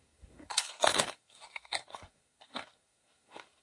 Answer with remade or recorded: remade